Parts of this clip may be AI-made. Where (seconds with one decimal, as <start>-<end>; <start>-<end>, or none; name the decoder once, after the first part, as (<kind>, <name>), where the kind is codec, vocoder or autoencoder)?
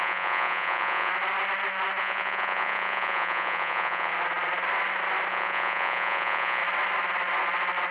0.0-1.1 (vocoder, Vocos); 2.0-4.1; 5.3-6.6